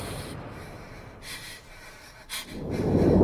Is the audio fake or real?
fake